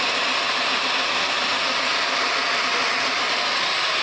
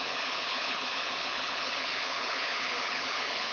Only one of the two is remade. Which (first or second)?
second